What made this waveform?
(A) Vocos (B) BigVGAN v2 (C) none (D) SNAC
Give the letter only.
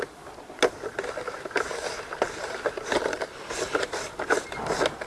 C